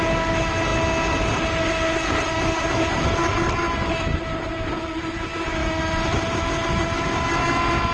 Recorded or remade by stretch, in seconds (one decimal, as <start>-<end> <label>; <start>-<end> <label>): 0.0-7.9 recorded